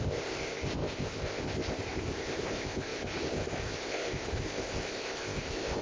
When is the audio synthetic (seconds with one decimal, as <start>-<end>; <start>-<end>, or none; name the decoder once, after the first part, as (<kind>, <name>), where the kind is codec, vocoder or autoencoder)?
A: 0.0-5.8 (codec, ZipCodec)